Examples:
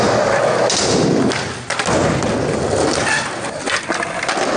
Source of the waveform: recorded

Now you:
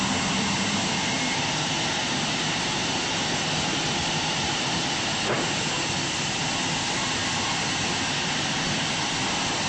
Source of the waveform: recorded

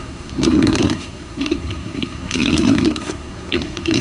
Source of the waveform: remade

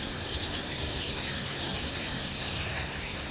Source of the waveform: remade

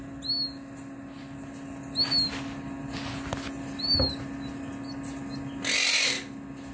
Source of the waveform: recorded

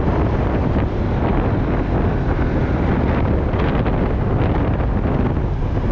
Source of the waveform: recorded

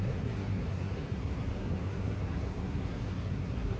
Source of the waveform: remade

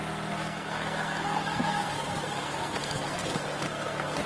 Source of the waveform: remade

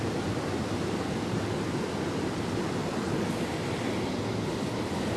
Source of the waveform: recorded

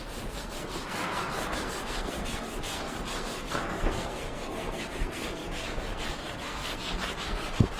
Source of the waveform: remade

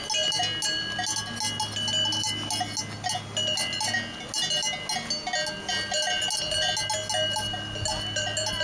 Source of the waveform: recorded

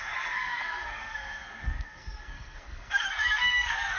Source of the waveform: remade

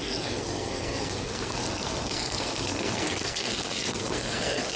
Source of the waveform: remade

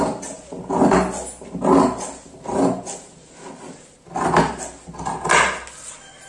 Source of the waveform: recorded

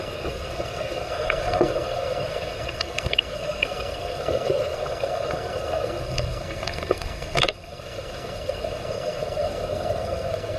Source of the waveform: remade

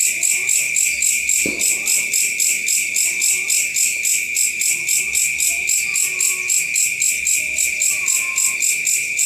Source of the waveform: recorded